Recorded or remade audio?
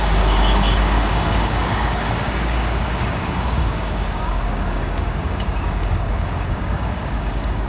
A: remade